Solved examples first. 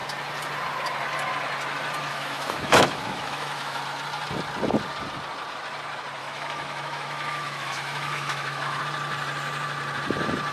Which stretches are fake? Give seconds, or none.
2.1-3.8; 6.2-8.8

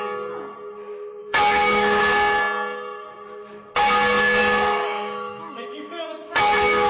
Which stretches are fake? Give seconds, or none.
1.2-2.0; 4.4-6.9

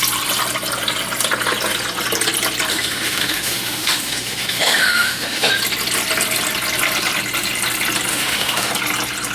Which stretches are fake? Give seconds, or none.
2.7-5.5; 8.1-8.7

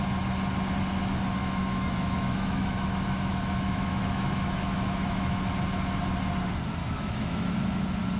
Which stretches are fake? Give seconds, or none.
1.4-5.5; 6.8-7.6

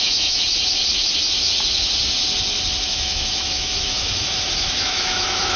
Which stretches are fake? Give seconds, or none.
0.0-0.4; 2.8-5.6

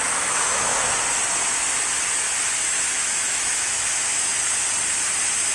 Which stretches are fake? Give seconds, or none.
0.0-0.7; 2.7-4.3

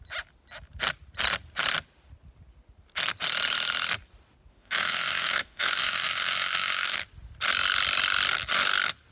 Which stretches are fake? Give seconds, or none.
4.5-7.0

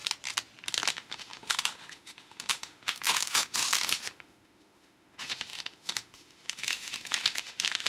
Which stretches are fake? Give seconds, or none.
0.9-7.9